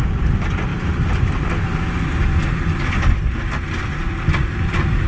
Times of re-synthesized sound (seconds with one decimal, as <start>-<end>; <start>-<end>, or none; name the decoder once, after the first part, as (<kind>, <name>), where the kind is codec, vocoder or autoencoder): none